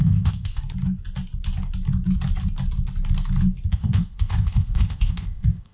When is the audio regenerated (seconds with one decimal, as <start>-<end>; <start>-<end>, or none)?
0.0-0.6; 3.7-5.7